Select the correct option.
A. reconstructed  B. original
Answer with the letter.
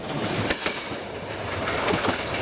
B